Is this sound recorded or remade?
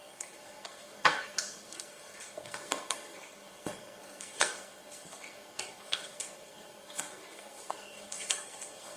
remade